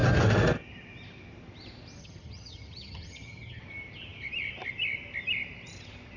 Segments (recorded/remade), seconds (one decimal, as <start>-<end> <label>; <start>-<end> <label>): 0.0-2.0 recorded; 2.0-3.6 remade; 3.6-6.2 recorded